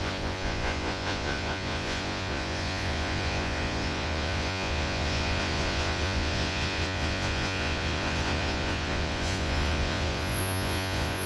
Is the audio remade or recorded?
remade